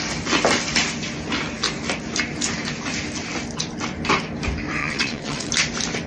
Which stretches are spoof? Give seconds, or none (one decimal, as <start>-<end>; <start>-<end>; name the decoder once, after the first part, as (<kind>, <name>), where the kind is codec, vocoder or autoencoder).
4.8-5.5 (vocoder, WaveNeXt)